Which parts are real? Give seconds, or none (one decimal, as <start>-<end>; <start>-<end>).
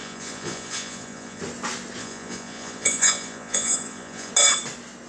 1.4-2.0; 4.3-5.1